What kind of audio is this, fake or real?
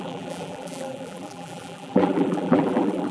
fake